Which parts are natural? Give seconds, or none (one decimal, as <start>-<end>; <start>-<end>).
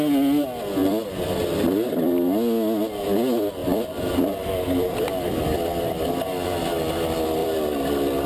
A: 0.0-0.8; 1.3-3.6; 5.4-7.4